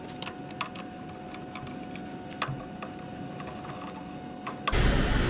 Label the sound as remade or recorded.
recorded